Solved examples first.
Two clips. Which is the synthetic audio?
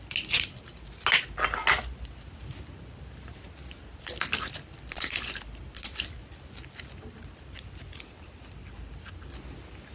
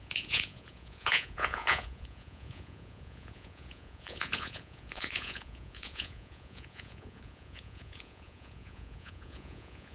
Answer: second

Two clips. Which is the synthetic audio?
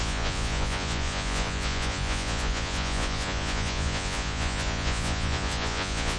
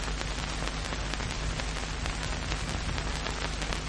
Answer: first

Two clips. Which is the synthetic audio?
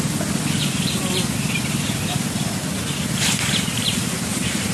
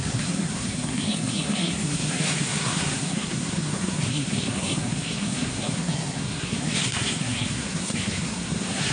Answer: second